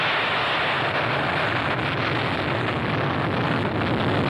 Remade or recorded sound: recorded